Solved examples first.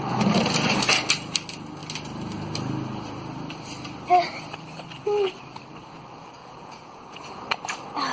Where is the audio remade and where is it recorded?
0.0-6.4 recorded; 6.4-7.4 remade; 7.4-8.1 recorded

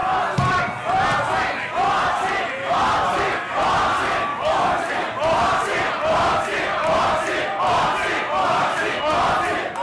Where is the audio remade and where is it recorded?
0.0-4.3 recorded; 4.3-4.9 remade; 4.9-8.4 recorded; 8.4-9.0 remade; 9.0-9.8 recorded

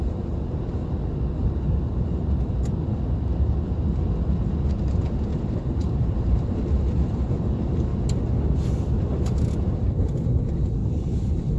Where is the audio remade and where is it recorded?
0.0-1.4 recorded; 1.4-2.1 remade; 2.1-5.3 recorded; 5.3-6.6 remade; 6.6-10.8 recorded; 10.8-11.6 remade

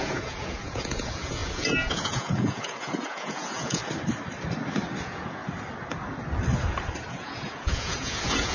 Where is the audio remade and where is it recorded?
0.0-3.8 remade; 3.8-5.0 recorded; 5.0-5.4 remade; 5.4-7.1 recorded; 7.1-8.5 remade

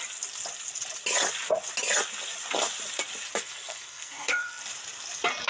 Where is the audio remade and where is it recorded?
0.0-3.4 recorded; 3.4-4.6 remade; 4.6-5.5 recorded

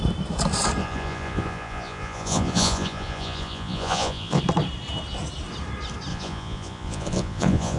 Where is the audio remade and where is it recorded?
0.0-0.8 recorded; 0.8-4.4 remade; 4.4-6.1 recorded; 6.1-7.8 remade

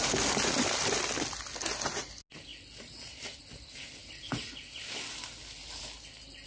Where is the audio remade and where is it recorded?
0.0-6.5 recorded

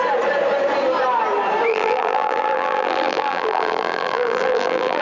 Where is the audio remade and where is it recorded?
0.0-1.7 recorded; 1.7-5.0 remade